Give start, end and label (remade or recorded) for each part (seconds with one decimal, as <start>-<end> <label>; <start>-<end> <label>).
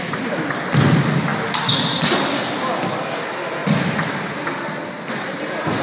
0.0-5.8 recorded